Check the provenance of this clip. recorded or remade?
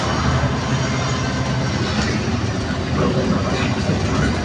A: recorded